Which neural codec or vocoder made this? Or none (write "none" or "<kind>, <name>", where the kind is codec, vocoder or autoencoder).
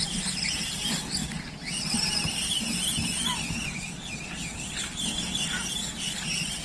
none